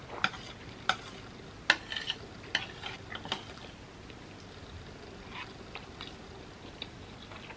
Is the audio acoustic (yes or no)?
yes